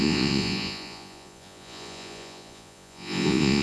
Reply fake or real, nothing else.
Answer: fake